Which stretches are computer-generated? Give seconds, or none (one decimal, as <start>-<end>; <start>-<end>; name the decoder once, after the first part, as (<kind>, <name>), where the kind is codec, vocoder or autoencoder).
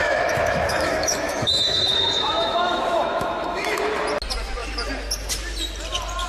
0.0-3.8 (autoencoder, DAC-VAE)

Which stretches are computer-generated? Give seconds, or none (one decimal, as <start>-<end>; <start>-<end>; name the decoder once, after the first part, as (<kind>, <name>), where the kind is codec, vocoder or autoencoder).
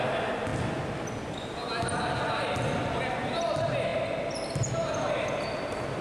none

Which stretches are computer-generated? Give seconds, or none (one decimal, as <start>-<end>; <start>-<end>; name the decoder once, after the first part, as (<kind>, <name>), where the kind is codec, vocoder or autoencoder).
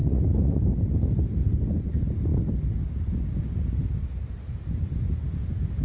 0.0-0.6 (vocoder, Vocos)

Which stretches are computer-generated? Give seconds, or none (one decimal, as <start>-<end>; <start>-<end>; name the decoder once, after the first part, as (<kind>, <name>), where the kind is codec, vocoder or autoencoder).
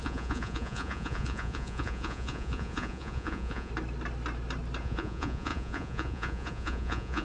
0.0-3.7 (vocoder, Vocos); 4.8-7.2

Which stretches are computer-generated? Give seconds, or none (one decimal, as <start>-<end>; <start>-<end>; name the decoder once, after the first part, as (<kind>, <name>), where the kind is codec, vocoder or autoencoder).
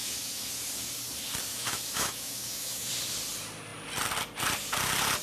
0.0-0.5 (autoencoder, DAC-VAE); 1.5-2.9